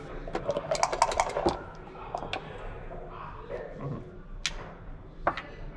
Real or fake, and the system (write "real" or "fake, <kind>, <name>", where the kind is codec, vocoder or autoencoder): real